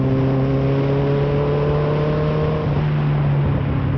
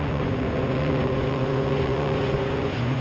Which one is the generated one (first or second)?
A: second